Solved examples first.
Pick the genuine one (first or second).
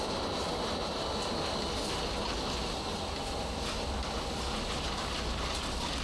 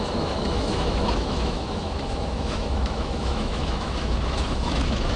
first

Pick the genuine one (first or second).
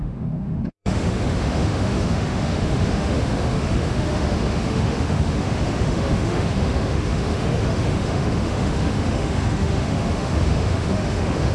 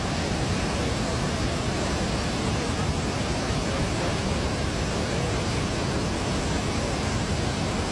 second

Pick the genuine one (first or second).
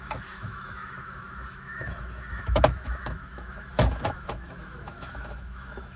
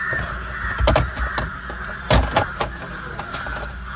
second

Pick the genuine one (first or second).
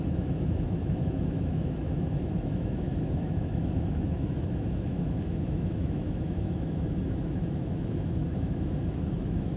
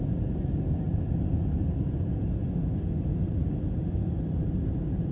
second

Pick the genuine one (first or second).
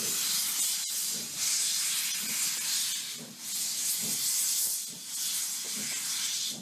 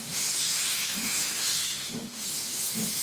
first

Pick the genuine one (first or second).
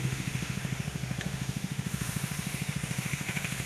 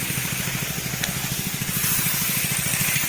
second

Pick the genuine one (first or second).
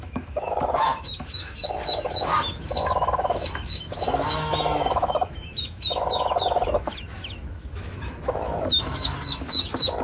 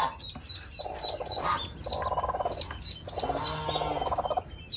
second